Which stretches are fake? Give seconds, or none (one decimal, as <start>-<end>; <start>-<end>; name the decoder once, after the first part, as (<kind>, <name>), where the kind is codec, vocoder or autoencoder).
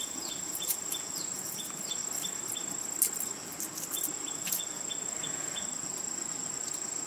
0.0-2.0 (vocoder, Vocos); 4.1-7.1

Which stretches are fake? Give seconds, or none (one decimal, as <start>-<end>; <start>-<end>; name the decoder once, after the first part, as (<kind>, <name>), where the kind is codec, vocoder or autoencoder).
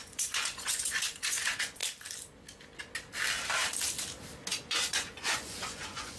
0.0-1.8 (vocoder, Vocos); 4.5-6.2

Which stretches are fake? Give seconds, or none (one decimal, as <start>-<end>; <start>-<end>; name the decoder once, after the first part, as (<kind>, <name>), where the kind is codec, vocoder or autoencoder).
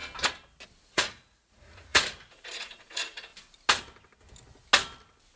0.8-3.3 (vocoder, Vocos)